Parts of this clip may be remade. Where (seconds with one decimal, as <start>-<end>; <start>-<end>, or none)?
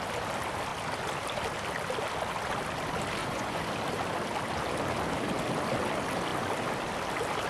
3.2-3.7